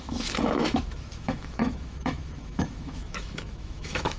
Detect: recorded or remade remade